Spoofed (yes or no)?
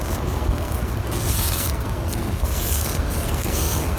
yes